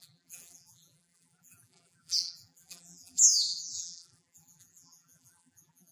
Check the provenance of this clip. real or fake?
fake